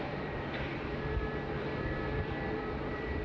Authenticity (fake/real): fake